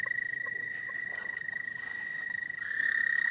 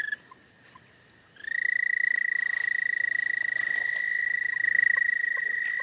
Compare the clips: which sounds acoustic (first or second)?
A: second